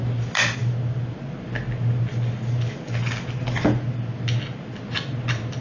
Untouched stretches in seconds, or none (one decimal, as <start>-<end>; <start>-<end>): 0.0-5.6